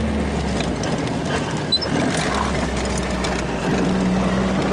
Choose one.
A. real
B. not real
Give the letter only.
A